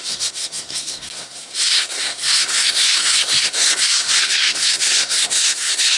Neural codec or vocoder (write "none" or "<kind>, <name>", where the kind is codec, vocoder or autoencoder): codec, SNAC